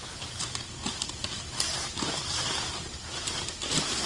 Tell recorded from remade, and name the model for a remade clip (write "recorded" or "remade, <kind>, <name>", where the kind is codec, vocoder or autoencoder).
recorded